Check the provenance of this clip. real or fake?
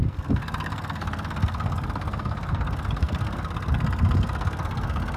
fake